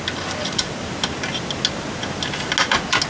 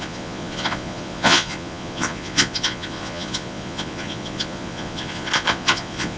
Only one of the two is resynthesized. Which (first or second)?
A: second